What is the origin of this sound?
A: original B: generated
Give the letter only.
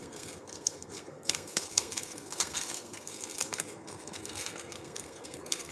B